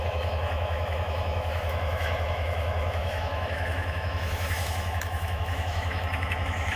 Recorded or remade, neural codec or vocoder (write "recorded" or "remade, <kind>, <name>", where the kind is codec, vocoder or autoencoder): remade, autoencoder, DAC-VAE